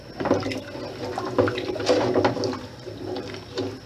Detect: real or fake real